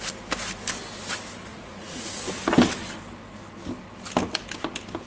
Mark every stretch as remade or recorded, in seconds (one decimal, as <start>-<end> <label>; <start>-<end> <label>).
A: 0.0-1.5 recorded; 1.5-2.1 remade; 2.1-5.1 recorded